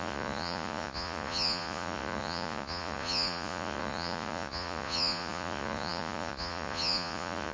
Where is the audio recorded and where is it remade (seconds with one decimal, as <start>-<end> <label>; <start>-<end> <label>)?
0.0-7.5 remade